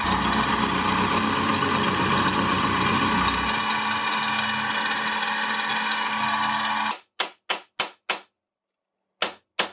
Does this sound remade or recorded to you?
recorded